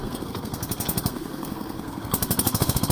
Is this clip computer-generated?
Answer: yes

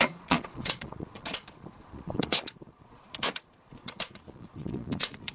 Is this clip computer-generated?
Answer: yes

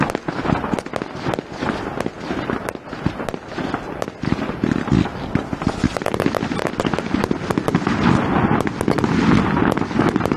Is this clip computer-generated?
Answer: no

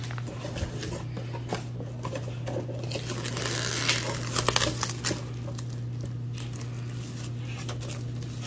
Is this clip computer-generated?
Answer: no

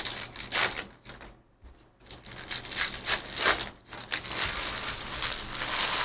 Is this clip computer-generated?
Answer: no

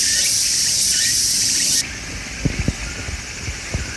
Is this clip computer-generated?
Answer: no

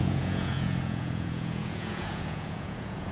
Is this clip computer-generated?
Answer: yes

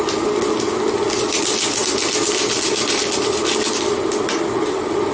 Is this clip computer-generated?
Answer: no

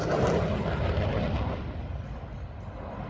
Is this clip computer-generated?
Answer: no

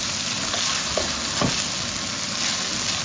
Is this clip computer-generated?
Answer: no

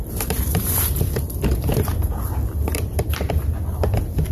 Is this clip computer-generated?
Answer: yes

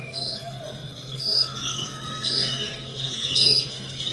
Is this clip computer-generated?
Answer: yes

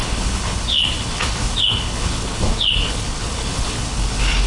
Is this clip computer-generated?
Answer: yes